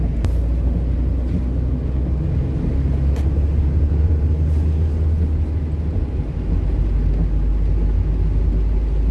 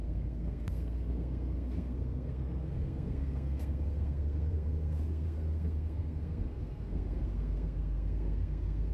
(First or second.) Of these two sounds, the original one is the first